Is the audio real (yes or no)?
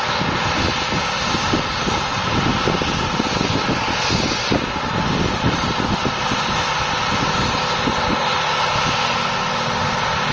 yes